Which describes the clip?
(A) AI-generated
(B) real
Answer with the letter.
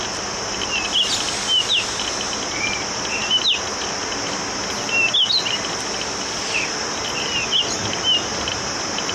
B